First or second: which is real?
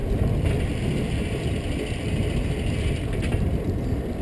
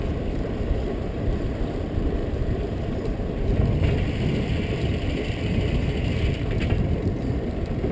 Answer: first